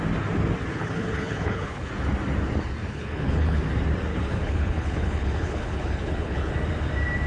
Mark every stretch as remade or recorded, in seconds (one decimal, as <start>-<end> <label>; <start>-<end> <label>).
0.0-0.7 recorded; 0.7-1.9 remade; 1.9-2.8 recorded; 2.8-3.6 remade; 3.6-4.1 recorded; 4.1-6.5 remade; 6.5-7.3 recorded